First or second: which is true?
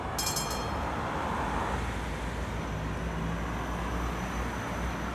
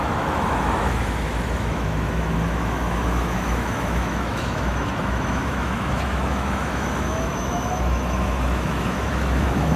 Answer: first